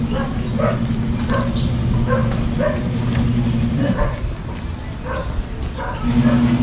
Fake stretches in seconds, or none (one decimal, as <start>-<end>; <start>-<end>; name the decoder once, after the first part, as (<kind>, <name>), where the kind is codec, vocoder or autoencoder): none